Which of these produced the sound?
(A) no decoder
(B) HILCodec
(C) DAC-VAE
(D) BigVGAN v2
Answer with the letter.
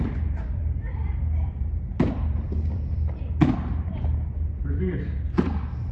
D